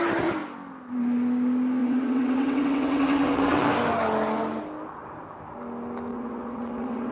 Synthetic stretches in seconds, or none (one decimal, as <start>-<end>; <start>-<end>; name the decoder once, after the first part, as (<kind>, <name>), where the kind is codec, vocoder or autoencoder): 1.8-3.7 (vocoder, WaveNeXt); 6.1-7.1